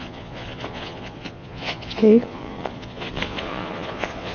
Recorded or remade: remade